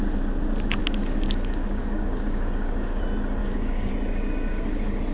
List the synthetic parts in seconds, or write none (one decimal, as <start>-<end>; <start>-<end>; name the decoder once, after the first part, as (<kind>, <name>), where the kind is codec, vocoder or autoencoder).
0.8-3.0 (codec, DAC); 3.4-3.9